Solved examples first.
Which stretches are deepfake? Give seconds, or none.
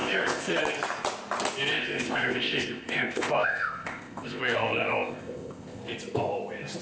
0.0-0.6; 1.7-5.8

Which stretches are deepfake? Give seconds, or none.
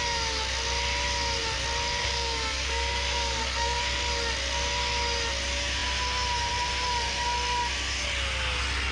2.0-3.8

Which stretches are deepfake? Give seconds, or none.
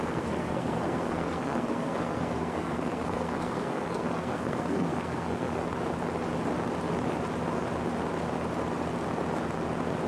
0.0-5.6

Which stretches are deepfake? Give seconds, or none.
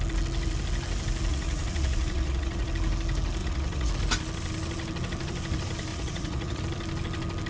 1.3-2.7; 3.4-3.9; 5.9-6.6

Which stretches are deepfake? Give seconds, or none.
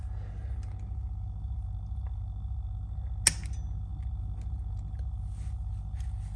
none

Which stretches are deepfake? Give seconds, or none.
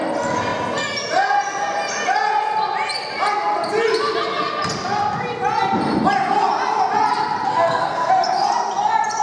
7.5-8.1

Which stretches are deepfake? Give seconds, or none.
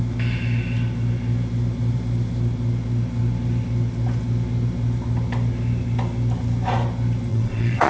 7.3-7.9